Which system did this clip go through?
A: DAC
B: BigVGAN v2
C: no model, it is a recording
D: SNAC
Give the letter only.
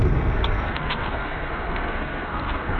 D